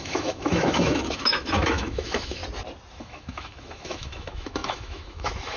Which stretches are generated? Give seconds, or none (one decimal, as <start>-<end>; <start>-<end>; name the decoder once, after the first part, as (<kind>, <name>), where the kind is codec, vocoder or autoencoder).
0.0-2.4 (autoencoder, DAC-VAE); 3.0-5.6